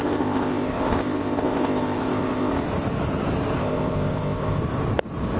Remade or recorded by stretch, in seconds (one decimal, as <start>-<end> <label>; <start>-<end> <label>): 0.0-2.5 remade; 2.5-3.6 recorded; 3.6-4.6 remade; 4.6-5.4 recorded